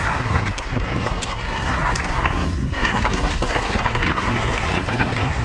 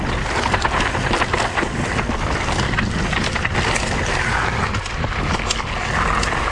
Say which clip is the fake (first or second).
first